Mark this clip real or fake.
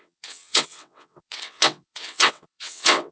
fake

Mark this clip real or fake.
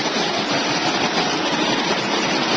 real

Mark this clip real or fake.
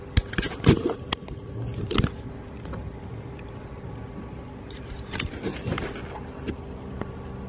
real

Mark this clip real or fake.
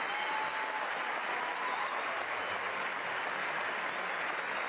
real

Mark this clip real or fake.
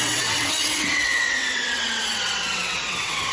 fake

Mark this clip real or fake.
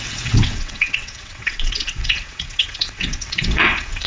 fake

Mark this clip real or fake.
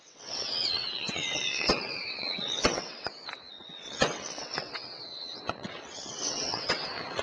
fake